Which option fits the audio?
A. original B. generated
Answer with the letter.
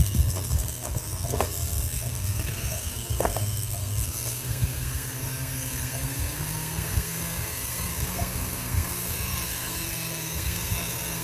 B